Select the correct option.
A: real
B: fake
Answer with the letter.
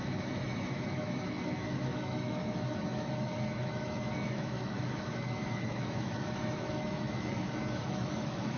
B